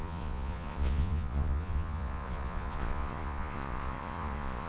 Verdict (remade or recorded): remade